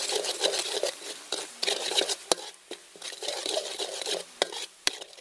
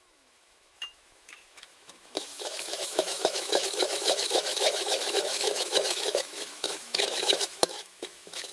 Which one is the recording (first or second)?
first